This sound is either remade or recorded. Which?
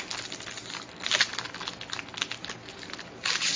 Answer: recorded